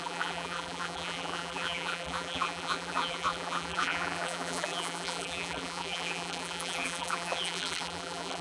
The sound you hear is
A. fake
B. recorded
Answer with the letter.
A